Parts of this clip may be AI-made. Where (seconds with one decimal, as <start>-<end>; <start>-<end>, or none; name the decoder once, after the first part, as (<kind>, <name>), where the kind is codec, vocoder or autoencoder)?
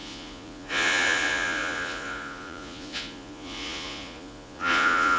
0.0-5.2 (vocoder, Vocos)